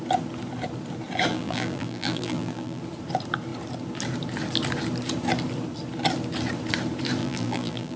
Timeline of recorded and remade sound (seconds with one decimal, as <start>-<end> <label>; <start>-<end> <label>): 0.0-1.3 recorded; 1.3-2.8 remade; 2.8-7.2 recorded; 7.2-8.0 remade